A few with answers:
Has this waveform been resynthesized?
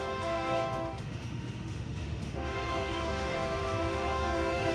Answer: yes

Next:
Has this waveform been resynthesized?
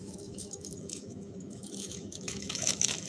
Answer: yes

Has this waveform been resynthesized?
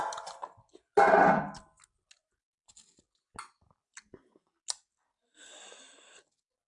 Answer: no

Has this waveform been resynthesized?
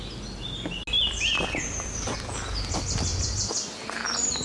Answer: no